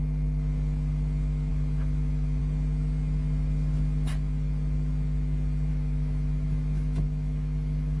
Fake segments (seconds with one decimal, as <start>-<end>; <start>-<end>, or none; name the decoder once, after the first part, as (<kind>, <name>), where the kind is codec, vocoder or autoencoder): 1.5-2.4 (autoencoder, DAC-VAE); 5.7-8.0